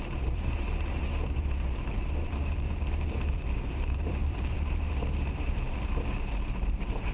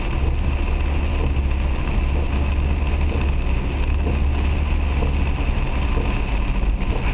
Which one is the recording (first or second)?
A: second